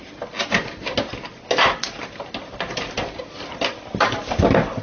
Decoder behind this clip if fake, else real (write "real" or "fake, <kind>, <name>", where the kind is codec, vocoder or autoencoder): real